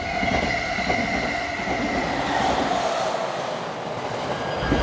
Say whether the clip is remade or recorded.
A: recorded